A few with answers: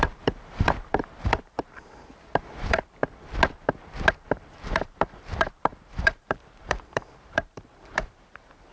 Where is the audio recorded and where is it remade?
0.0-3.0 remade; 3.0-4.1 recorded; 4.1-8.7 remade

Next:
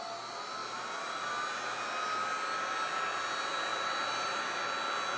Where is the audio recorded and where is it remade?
0.0-0.6 recorded; 0.6-1.3 remade; 1.3-3.7 recorded; 3.7-4.4 remade; 4.4-5.2 recorded

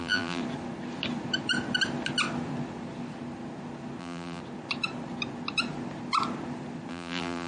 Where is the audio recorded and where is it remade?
0.0-0.4 remade; 0.4-4.0 recorded; 4.0-4.4 remade; 4.4-6.9 recorded; 6.9-7.5 remade

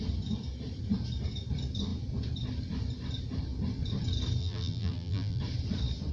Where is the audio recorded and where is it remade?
0.0-4.4 recorded; 4.4-5.4 remade; 5.4-6.1 recorded

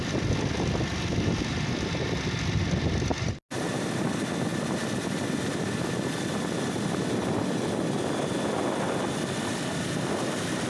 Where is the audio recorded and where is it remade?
0.0-10.7 recorded

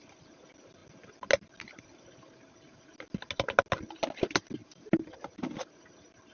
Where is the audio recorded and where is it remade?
0.0-4.6 recorded; 4.6-5.3 remade; 5.3-6.3 recorded